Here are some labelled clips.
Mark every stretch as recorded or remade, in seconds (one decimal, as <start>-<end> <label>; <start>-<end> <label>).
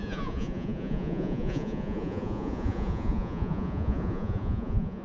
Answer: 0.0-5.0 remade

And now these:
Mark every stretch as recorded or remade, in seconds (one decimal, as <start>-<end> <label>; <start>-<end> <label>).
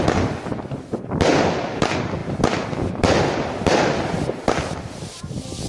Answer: 0.0-5.7 recorded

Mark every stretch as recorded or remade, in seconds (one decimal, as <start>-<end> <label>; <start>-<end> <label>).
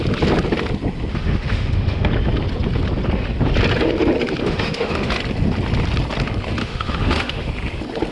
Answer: 0.0-1.1 recorded; 1.1-2.1 remade; 2.1-4.4 recorded; 4.4-5.1 remade; 5.1-6.6 recorded; 6.6-7.5 remade; 7.5-8.1 recorded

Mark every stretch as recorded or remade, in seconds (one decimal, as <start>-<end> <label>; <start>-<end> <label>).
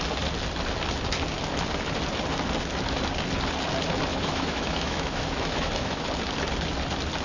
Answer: 0.0-4.1 recorded; 4.1-6.1 remade; 6.1-7.2 recorded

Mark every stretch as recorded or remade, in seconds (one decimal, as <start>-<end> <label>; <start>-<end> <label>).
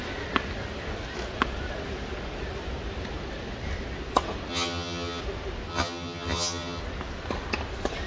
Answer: 0.0-4.5 recorded; 4.5-5.2 remade; 5.2-5.7 recorded; 5.7-6.8 remade; 6.8-8.1 recorded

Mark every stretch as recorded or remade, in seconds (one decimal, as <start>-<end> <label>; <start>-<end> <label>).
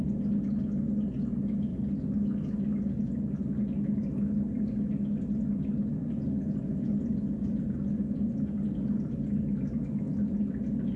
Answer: 0.0-11.0 recorded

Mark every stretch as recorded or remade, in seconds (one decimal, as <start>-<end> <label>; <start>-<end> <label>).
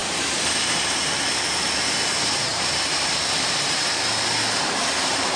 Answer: 0.0-1.3 remade; 1.3-2.5 recorded; 2.5-3.8 remade; 3.8-5.4 recorded